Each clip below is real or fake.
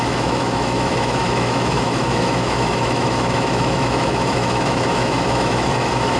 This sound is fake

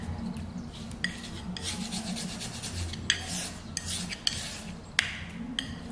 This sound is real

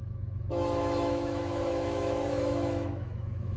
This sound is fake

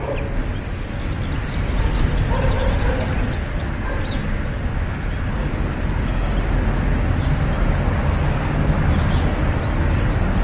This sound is real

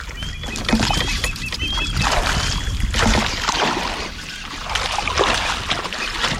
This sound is real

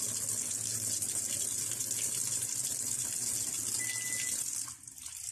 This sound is real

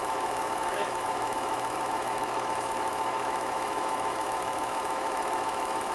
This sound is fake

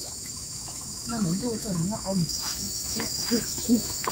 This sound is fake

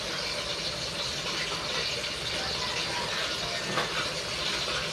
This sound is real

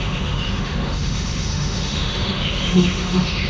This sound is fake